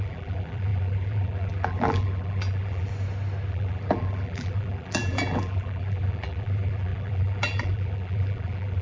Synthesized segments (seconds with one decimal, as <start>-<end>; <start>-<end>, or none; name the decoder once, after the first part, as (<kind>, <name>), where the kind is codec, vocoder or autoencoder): 0.0-2.9 (vocoder, BigVGAN v2); 3.5-8.8